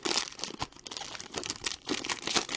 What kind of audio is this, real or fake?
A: real